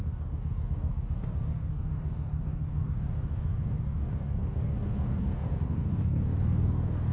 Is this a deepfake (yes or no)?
yes